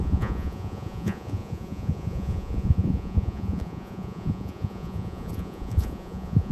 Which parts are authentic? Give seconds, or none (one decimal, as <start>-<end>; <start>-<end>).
none